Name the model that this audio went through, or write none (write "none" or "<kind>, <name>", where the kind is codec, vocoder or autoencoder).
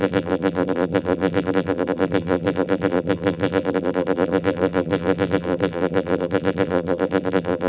vocoder, BigVGAN v2